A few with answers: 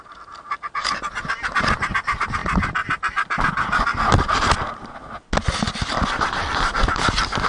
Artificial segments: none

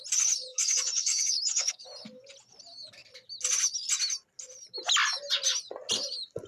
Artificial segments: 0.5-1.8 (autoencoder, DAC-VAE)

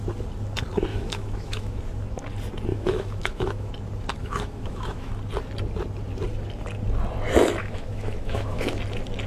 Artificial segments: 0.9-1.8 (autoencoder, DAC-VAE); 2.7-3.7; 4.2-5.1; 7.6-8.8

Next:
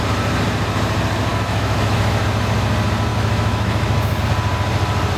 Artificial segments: 1.3-2.2 (autoencoder, DAC-VAE); 3.1-4.2

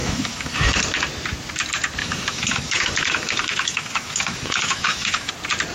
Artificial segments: 0.0-0.8 (autoencoder, DAC-VAE); 2.0-5.3

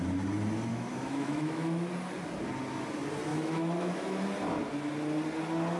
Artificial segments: 0.7-1.9 (autoencoder, DAC-VAE); 3.3-4.2